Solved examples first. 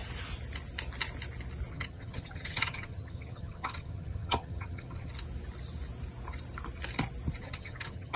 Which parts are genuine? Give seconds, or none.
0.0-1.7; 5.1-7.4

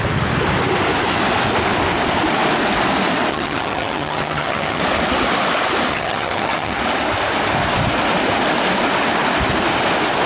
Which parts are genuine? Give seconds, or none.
0.0-3.3; 4.8-5.9; 6.8-10.3

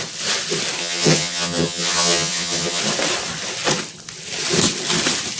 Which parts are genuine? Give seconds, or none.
0.0-0.8; 2.8-5.4

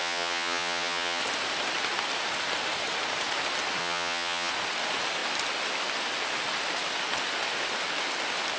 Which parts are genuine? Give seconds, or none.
1.2-3.8; 4.5-8.6

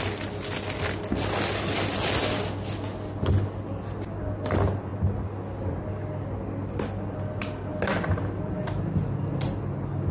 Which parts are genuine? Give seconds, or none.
0.0-10.1

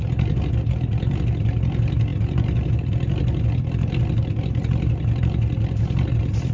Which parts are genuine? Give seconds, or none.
0.0-6.5

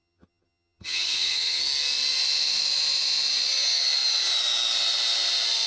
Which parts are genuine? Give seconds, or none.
1.6-5.7

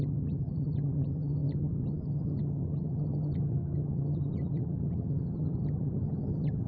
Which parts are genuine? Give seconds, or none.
none